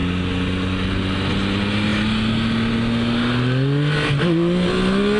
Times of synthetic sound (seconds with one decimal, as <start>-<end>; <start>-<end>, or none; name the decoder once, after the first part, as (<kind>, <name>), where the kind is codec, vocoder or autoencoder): none